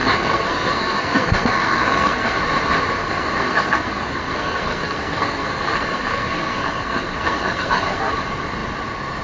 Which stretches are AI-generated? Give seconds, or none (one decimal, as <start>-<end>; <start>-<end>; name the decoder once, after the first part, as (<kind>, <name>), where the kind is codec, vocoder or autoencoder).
0.0-2.4 (codec, SNAC); 3.0-8.1